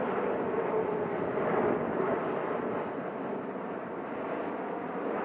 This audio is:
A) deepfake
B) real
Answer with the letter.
B